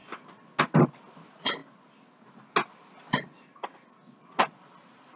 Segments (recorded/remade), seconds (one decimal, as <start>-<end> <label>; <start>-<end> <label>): 0.0-5.2 recorded